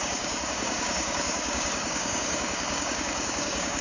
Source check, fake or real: fake